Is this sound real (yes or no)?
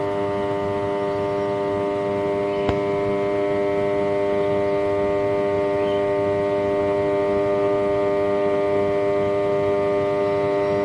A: yes